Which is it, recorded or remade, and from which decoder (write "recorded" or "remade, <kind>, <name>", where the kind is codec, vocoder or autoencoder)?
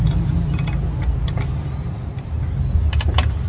recorded